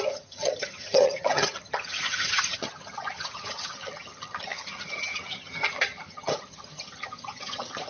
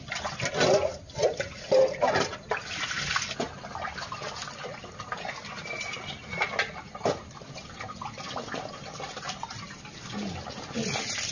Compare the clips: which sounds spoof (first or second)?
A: first